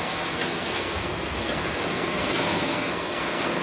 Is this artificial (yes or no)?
yes